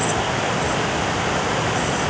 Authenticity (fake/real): real